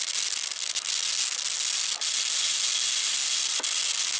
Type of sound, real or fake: real